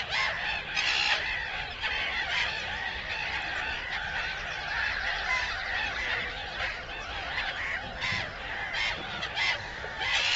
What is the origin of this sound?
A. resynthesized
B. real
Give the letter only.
A